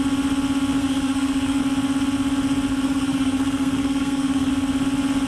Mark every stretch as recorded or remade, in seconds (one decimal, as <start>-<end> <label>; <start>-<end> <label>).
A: 0.0-0.8 recorded; 0.8-1.6 remade; 1.6-2.7 recorded; 2.7-4.5 remade; 4.5-5.3 recorded